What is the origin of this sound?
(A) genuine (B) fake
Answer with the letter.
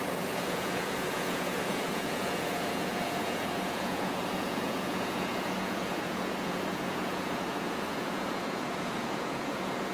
B